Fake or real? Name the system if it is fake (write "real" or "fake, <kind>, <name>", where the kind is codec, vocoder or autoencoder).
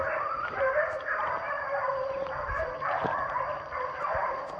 fake, vocoder, BigVGAN v2